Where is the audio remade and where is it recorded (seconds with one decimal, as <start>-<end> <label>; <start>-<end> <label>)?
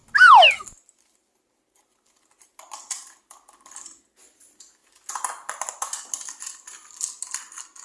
0.0-7.8 recorded